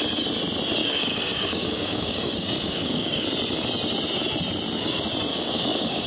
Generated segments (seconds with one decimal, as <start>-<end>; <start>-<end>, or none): 0.8-3.2; 5.3-6.1